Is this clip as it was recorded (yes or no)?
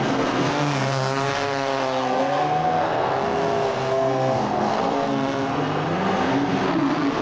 no